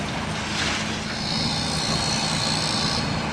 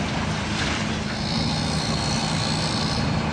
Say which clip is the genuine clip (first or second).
first